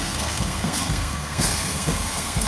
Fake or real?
fake